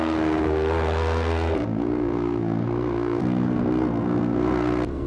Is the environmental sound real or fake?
fake